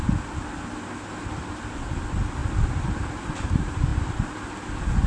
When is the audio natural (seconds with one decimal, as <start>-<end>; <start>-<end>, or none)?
0.0-2.4; 3.5-5.1